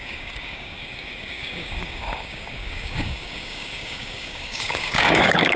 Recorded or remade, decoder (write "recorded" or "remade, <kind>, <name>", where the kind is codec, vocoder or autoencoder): remade, codec, DAC